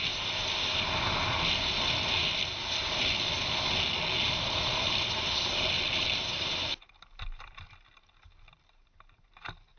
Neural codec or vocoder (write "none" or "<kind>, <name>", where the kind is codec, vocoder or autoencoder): none